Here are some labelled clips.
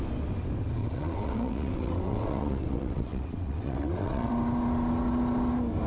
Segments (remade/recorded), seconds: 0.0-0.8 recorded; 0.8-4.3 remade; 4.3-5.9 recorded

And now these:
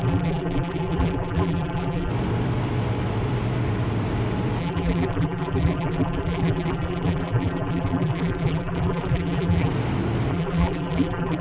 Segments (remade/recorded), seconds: 0.0-2.1 remade; 2.1-4.6 recorded; 4.6-9.7 remade; 9.7-10.3 recorded; 10.3-11.4 remade